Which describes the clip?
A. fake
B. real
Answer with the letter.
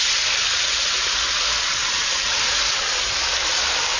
B